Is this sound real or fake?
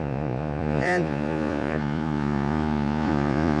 fake